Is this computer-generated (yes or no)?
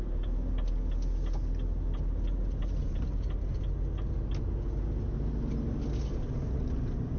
no